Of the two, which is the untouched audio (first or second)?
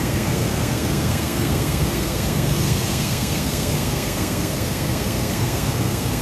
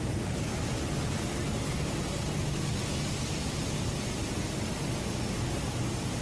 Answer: second